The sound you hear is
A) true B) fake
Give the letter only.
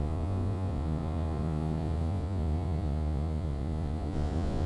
B